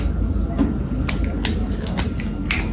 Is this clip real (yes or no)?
yes